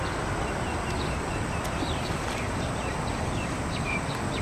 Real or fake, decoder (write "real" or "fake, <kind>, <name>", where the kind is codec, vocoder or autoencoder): real